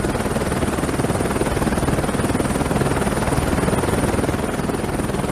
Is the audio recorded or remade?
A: recorded